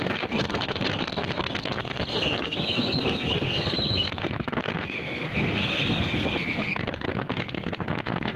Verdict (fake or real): fake